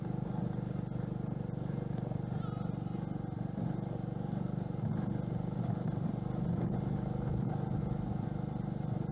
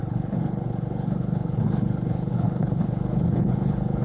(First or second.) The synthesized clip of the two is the second